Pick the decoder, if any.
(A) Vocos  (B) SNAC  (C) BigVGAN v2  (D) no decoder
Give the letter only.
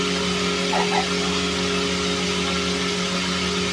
D